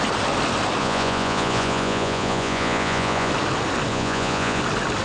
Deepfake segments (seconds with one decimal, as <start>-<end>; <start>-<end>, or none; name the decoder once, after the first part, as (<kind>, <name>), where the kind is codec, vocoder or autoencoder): 0.8-3.3 (vocoder, Vocos); 3.9-4.6